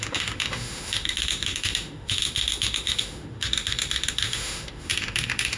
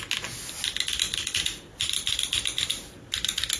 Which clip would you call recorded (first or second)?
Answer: second